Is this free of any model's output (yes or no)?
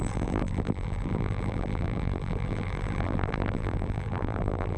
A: no